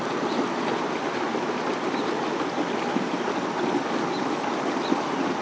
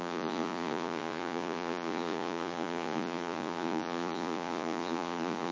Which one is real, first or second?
first